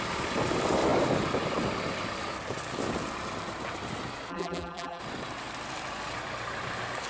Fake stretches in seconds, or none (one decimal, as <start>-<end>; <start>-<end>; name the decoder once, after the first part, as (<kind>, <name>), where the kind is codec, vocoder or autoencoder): 4.3-5.0 (vocoder, BigVGAN v2)